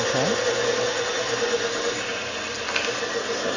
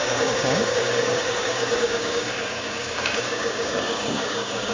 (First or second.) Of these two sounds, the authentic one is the first